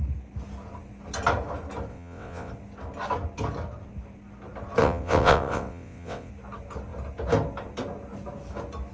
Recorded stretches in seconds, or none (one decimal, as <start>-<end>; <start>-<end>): 0.0-1.9; 2.5-4.8; 6.3-8.9